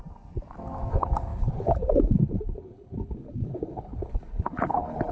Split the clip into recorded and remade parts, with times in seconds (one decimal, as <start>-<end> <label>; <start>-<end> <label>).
0.0-0.9 recorded; 0.9-5.1 remade